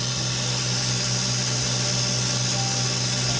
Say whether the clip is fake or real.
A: real